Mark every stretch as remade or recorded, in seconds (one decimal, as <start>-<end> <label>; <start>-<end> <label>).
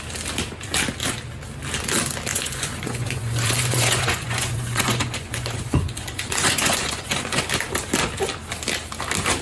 0.0-2.3 recorded; 2.3-7.4 remade; 7.4-9.4 recorded